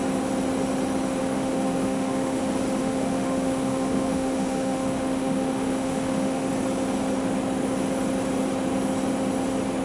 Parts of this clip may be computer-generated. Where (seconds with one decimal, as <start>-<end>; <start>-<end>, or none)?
1.2-2.4; 2.8-6.5